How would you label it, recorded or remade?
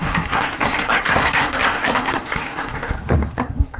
remade